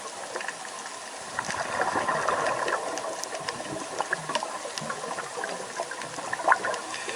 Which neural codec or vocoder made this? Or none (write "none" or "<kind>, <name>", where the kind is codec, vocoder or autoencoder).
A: none